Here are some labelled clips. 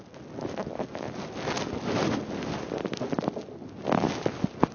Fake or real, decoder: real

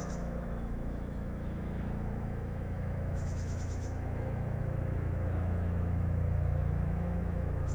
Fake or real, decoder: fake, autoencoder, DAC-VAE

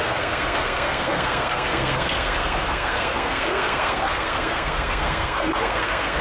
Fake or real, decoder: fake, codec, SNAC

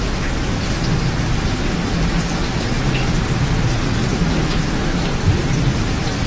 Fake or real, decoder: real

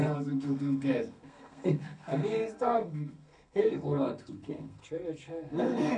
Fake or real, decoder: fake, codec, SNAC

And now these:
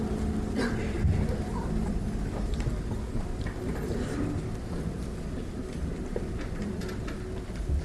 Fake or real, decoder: real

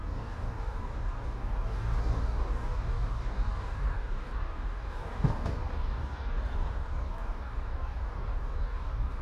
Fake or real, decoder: fake, codec, DAC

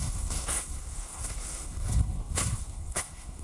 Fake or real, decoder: fake, codec, SNAC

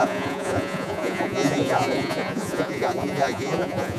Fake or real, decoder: fake, vocoder, Vocos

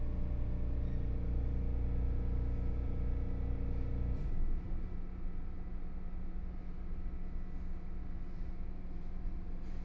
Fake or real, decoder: real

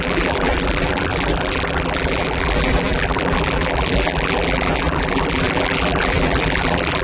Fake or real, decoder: fake, vocoder, BigVGAN v2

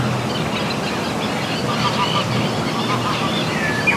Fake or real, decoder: real